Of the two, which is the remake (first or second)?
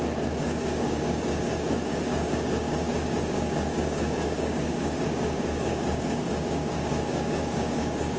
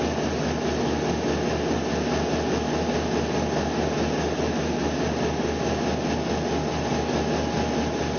first